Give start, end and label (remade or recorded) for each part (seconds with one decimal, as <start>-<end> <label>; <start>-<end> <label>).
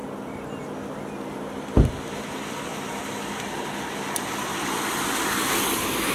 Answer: 0.0-6.1 recorded